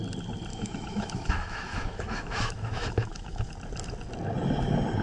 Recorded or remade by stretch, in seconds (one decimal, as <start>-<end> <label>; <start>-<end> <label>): 0.0-0.5 recorded; 0.5-3.5 remade; 3.5-5.0 recorded